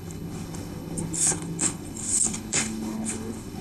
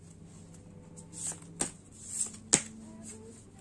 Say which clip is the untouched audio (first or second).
second